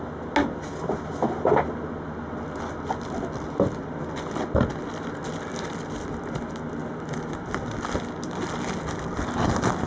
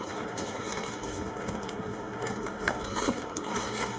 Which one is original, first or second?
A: first